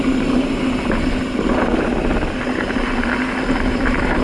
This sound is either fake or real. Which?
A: real